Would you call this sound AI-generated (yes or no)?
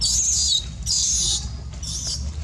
no